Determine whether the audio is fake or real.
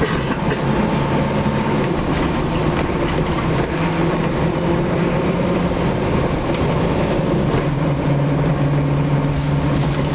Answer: real